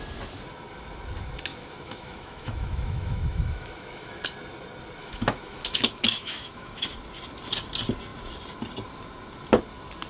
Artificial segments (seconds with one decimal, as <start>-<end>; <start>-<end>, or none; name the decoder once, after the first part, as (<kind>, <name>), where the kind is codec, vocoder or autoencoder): 1.5-4.2 (autoencoder, DAC-VAE); 5.0-6.9